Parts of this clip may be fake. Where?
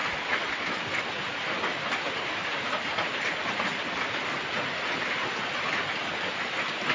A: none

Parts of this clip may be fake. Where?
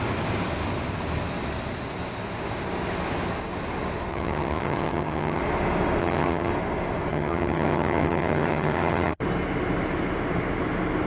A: 4.1-5.4 (vocoder, HiFi-GAN); 6.0-6.5; 7.1-9.2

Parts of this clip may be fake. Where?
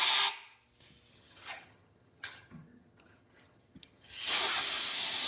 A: 1.1-4.3 (vocoder, HiFi-GAN)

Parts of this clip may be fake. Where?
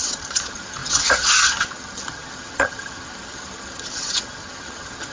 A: 0.0-5.1 (vocoder, HiFi-GAN)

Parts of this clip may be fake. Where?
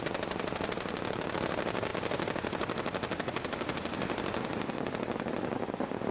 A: none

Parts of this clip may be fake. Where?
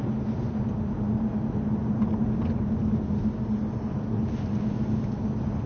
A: none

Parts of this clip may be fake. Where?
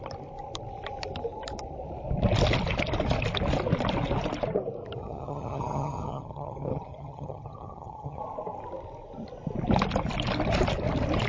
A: 5.0-8.2 (vocoder, HiFi-GAN)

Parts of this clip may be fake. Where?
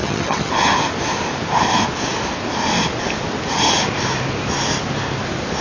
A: 0.0-0.5 (vocoder, HiFi-GAN)